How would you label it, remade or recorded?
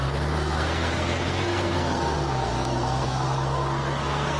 remade